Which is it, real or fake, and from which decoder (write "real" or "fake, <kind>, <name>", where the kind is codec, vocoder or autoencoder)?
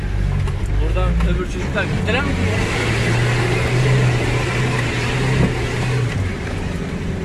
real